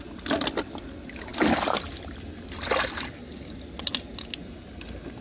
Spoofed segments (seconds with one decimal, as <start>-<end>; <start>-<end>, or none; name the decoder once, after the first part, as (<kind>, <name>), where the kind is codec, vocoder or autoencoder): none